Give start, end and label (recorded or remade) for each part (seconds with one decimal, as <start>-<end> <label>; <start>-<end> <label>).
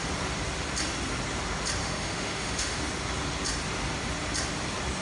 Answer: 0.0-1.8 recorded; 1.8-2.8 remade; 2.8-5.0 recorded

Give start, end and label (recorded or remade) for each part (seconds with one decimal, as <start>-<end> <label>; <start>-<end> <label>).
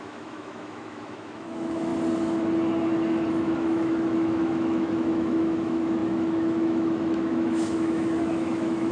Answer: 0.0-1.9 remade; 1.9-3.3 recorded; 3.3-8.9 remade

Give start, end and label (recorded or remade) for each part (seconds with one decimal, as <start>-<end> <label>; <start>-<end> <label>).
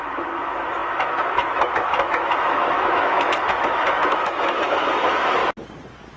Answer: 0.0-5.4 remade; 5.4-6.2 recorded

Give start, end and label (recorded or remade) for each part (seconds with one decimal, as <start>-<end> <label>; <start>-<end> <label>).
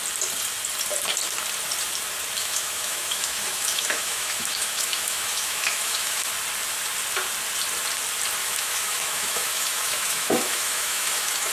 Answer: 0.0-2.4 recorded; 2.4-6.3 remade; 6.3-8.4 recorded; 8.4-11.5 remade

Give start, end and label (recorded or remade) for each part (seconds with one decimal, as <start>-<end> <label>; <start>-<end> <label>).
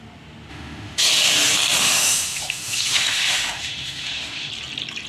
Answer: 0.0-0.5 recorded; 0.5-1.0 remade; 1.0-1.8 recorded; 1.8-4.5 remade; 4.5-5.1 recorded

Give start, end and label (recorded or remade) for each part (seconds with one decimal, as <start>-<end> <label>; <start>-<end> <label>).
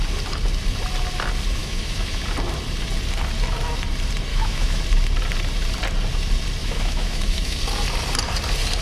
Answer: 0.0-1.6 recorded; 1.6-2.2 remade; 2.2-4.3 recorded; 4.3-4.8 remade; 4.8-6.6 recorded; 6.6-7.6 remade; 7.6-8.8 recorded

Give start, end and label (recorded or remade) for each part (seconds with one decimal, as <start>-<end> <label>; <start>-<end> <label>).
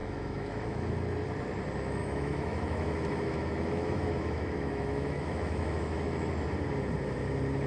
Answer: 0.0-0.9 remade; 0.9-2.0 recorded; 2.0-6.3 remade; 6.3-7.7 recorded